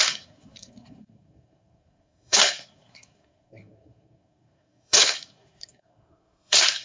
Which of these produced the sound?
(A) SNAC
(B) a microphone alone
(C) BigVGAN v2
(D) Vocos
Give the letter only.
A